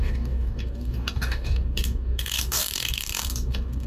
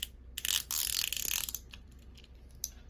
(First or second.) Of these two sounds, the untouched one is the second